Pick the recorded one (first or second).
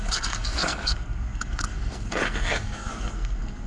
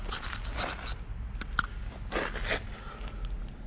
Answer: second